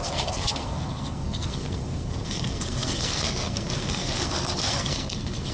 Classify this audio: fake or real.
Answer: fake